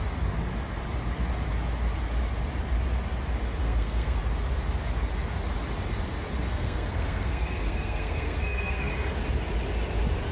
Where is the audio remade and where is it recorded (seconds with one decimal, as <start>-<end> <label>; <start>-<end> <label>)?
0.0-3.6 recorded; 3.6-4.2 remade; 4.2-6.5 recorded; 6.5-8.9 remade; 8.9-10.3 recorded